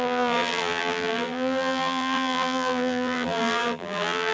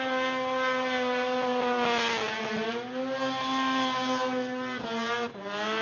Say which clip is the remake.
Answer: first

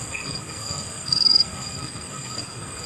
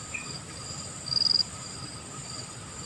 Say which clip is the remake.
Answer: first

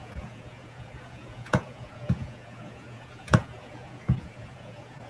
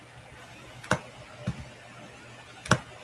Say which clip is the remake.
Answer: first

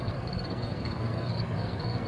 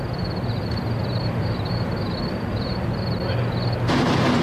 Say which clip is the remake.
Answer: first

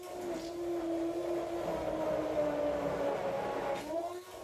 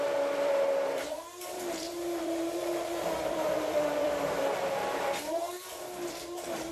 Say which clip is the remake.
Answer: second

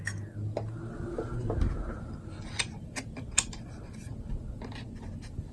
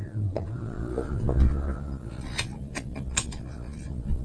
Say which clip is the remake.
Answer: second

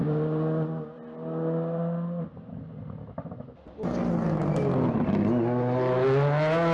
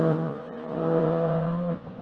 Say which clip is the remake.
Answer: second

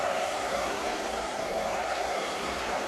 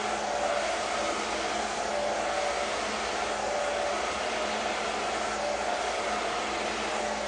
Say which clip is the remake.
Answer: first